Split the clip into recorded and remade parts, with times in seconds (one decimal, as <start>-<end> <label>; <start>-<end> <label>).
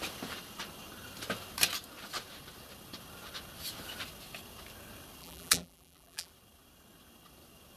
0.0-5.2 recorded; 5.2-6.3 remade; 6.3-7.8 recorded